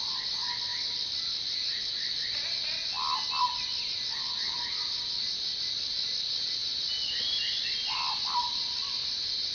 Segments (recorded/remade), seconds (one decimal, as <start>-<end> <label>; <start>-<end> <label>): 0.0-9.5 recorded

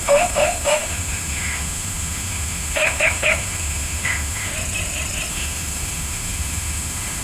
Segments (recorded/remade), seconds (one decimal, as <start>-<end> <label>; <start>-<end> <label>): 0.0-4.5 remade; 4.5-5.3 recorded; 5.3-7.2 remade

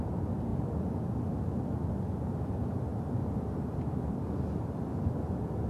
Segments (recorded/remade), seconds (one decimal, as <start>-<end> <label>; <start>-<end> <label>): 0.0-5.7 recorded

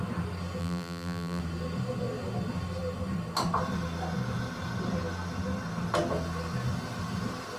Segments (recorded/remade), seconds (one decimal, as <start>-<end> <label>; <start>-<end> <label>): 0.0-0.6 recorded; 0.6-1.4 remade; 1.4-7.6 recorded

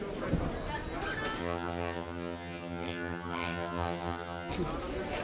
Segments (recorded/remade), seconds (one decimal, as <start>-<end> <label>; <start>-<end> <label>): 0.0-1.4 recorded; 1.4-4.5 remade; 4.5-5.2 recorded

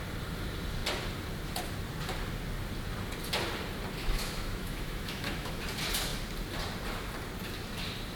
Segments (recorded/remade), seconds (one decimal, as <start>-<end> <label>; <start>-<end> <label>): 0.0-4.0 recorded; 4.0-5.6 remade; 5.6-8.2 recorded

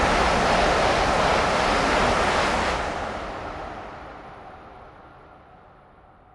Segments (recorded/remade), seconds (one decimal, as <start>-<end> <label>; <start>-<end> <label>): 0.0-6.3 recorded

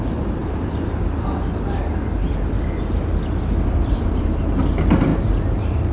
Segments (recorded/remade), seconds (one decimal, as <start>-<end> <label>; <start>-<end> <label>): 0.0-5.9 recorded